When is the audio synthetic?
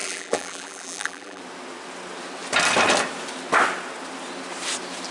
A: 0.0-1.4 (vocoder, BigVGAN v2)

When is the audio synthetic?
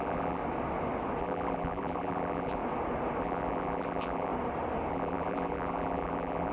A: 0.0-0.4 (vocoder, BigVGAN v2); 1.2-2.6; 3.2-4.3; 4.9-6.5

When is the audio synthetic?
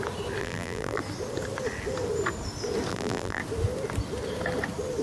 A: 0.4-1.0 (vocoder, BigVGAN v2); 2.9-3.4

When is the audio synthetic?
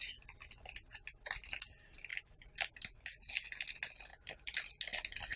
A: 4.1-4.7 (vocoder, BigVGAN v2)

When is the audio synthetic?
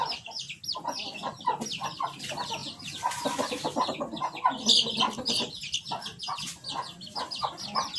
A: none